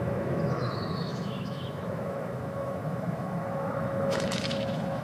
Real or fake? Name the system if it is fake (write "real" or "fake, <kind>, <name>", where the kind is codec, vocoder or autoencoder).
fake, autoencoder, DAC-VAE